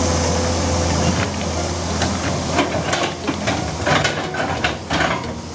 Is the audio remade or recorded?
recorded